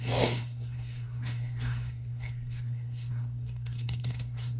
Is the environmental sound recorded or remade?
remade